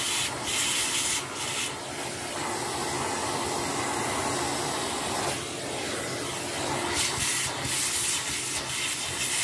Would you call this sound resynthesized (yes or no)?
no